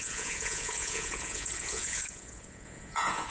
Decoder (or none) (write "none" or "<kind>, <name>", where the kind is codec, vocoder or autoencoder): vocoder, Vocos